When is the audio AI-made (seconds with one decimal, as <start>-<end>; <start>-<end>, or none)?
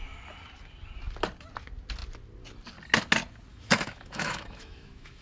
3.5-5.2